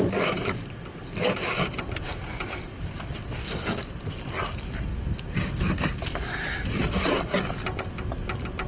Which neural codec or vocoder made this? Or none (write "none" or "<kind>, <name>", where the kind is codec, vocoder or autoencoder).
none